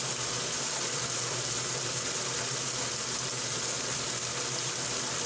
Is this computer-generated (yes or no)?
no